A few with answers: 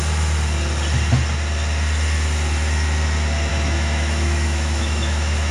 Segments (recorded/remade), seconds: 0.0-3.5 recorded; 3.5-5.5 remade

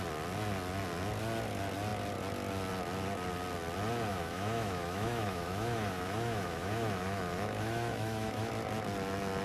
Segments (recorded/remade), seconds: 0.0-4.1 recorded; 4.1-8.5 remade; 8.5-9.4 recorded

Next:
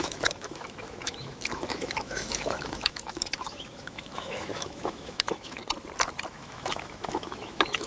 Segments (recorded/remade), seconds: 0.0-5.6 remade; 5.6-6.3 recorded; 6.3-7.9 remade

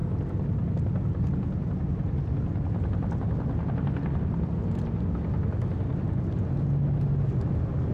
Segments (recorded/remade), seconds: 0.0-7.9 recorded

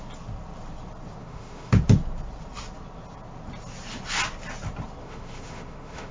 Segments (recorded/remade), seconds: 0.0-1.2 recorded; 1.2-1.7 remade; 1.7-5.0 recorded; 5.0-6.1 remade

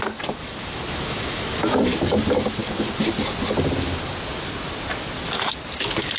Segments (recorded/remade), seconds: 0.0-0.4 recorded; 0.4-1.8 remade; 1.8-6.2 recorded